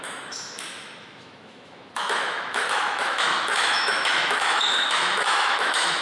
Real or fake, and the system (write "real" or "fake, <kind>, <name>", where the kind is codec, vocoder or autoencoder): fake, autoencoder, DAC-VAE